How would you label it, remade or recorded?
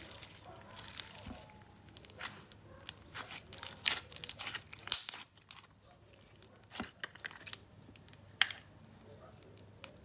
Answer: recorded